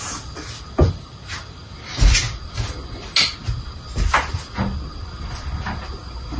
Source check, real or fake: real